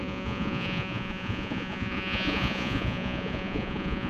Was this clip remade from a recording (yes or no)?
yes